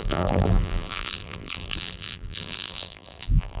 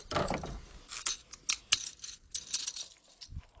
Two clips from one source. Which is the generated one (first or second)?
first